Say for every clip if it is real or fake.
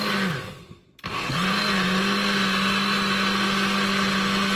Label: real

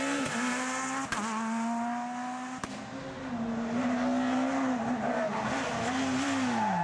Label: real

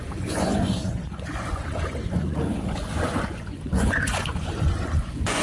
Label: fake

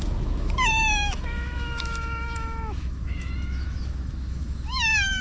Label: fake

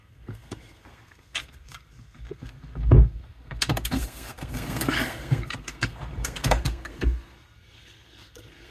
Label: fake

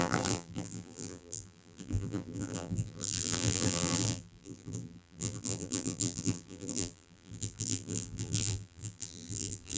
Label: fake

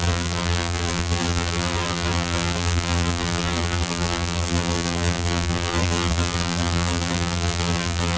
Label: fake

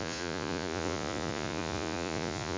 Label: fake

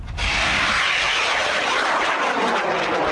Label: real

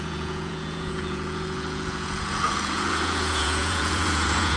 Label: fake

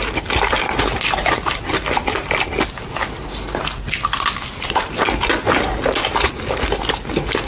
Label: real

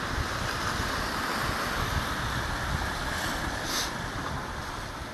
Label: real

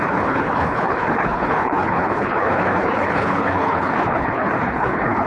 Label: fake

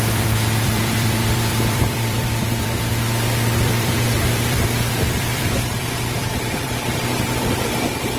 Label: fake